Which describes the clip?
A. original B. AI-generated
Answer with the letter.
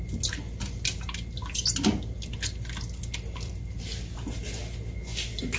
A